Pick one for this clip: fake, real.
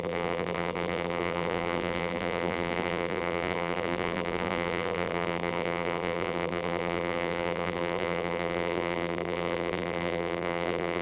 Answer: fake